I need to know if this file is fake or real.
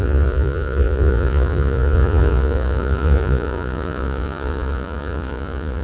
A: fake